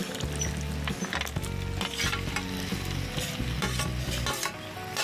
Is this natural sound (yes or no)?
yes